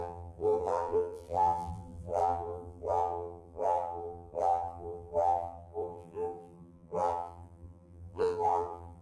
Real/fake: fake